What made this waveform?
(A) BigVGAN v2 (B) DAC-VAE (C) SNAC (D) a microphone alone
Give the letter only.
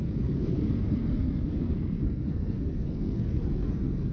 C